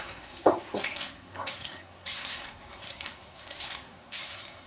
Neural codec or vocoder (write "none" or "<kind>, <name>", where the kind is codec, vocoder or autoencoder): codec, SNAC